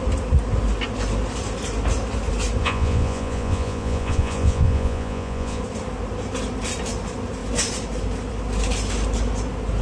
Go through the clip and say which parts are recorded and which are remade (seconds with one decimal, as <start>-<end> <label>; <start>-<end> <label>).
0.0-2.6 recorded; 2.6-5.6 remade; 5.6-9.8 recorded